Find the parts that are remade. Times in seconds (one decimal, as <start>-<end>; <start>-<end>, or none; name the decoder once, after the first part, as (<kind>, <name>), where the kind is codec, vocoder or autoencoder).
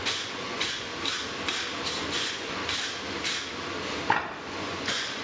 0.0-0.9 (vocoder, Vocos); 2.0-2.6; 4.4-5.2